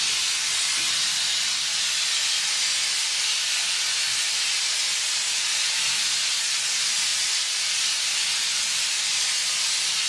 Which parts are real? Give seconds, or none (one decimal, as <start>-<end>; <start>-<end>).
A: 0.0-10.1